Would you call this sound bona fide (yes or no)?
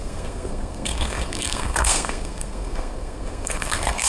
no